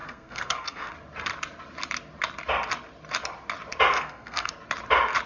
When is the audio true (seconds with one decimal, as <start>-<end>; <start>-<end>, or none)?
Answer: 0.9-3.9; 4.5-5.3